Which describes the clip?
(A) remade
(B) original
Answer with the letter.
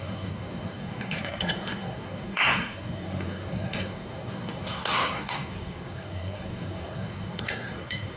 A